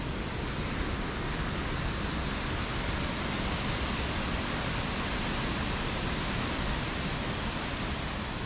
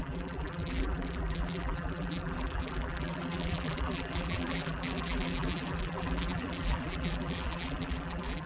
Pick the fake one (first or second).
second